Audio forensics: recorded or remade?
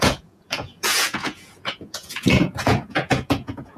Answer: remade